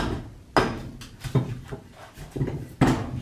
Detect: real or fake real